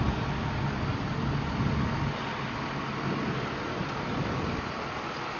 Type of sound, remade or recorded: recorded